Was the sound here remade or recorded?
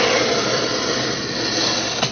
recorded